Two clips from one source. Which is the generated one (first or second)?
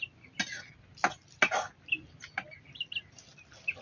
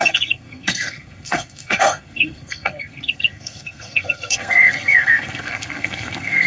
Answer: second